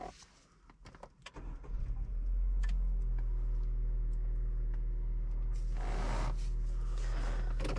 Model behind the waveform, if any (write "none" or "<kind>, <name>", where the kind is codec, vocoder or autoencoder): none